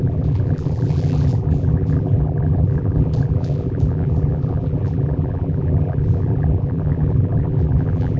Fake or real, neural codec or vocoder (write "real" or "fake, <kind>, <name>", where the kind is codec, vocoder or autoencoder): fake, vocoder, BigVGAN v2